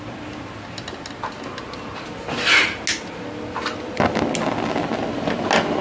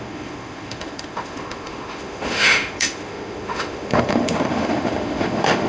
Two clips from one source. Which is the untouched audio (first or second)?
first